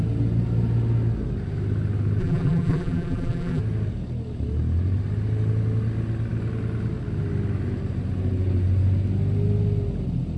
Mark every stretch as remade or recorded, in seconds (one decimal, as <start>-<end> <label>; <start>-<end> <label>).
0.0-2.2 recorded; 2.2-3.6 remade; 3.6-10.4 recorded